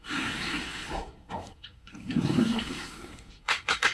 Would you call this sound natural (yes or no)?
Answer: no